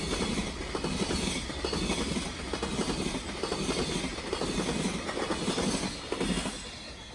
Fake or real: real